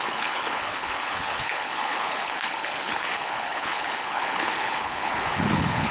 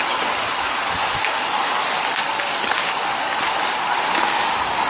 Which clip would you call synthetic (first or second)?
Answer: first